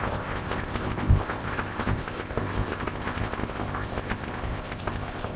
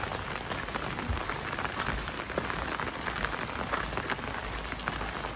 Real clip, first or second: second